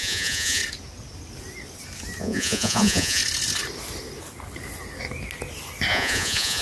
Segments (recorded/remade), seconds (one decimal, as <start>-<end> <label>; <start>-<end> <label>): 0.0-0.6 remade; 0.6-2.2 recorded; 2.2-3.2 remade; 3.2-5.9 recorded; 5.9-6.6 remade